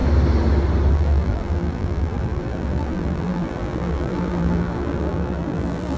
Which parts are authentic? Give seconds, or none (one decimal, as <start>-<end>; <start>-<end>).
0.0-0.9